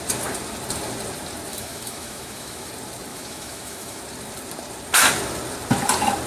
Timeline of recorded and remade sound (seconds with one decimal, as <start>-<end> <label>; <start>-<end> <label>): 0.0-1.5 recorded; 1.5-2.7 remade; 2.7-3.1 recorded; 3.1-4.0 remade; 4.0-6.3 recorded